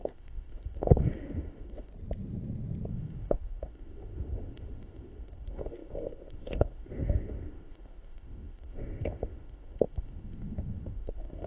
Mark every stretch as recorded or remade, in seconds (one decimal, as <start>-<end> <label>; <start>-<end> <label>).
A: 0.0-1.9 remade; 1.9-2.9 recorded; 2.9-11.5 remade